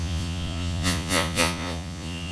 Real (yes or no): no